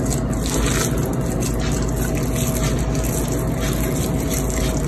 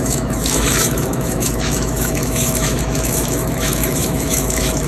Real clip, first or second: first